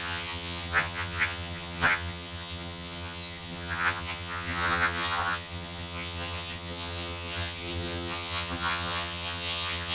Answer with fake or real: fake